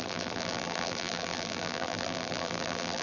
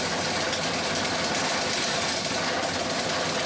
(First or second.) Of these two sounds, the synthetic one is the first